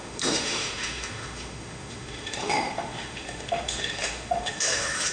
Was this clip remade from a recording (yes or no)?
yes